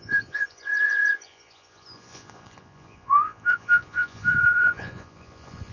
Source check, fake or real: fake